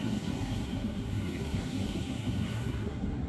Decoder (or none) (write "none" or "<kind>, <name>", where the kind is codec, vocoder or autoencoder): codec, SNAC